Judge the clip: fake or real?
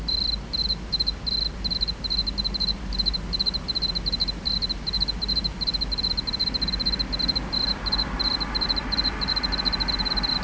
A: real